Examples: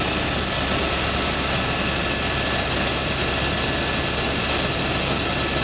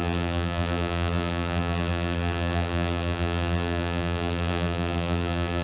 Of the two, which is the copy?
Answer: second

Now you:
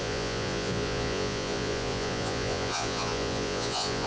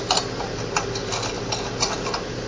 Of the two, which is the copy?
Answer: first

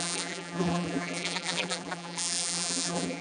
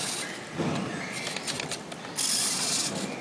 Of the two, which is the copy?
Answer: first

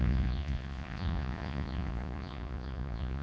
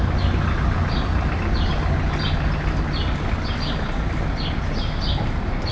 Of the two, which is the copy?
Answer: first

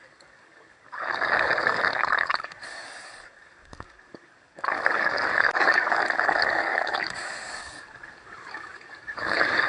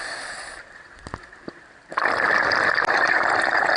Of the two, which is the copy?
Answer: first